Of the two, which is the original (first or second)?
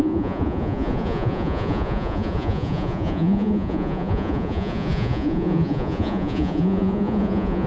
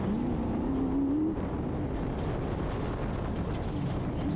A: second